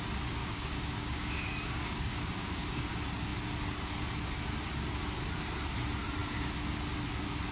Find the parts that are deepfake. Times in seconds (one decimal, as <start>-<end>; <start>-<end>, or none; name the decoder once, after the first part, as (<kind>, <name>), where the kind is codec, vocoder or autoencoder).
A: 0.4-2.9 (codec, DAC)